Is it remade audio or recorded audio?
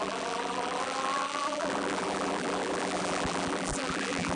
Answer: remade